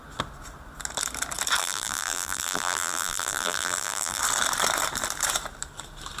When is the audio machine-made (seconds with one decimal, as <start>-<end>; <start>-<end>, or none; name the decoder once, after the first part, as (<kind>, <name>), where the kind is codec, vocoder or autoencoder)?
1.6-4.2 (vocoder, BigVGAN v2)